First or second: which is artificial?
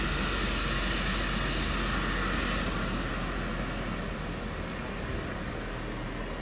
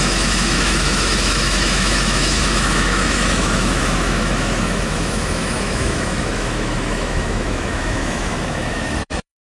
second